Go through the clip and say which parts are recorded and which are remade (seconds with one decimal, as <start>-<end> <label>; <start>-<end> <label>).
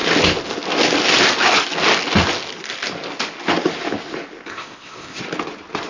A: 0.0-4.5 recorded; 4.5-5.2 remade; 5.2-5.9 recorded